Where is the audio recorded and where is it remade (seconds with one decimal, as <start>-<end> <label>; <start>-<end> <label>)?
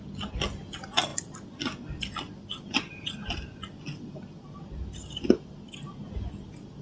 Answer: 0.0-6.8 recorded